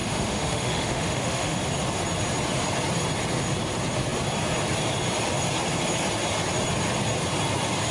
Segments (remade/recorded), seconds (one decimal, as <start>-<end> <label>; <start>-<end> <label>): 0.0-1.6 remade; 1.6-7.9 recorded